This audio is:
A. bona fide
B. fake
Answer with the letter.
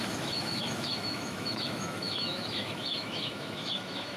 B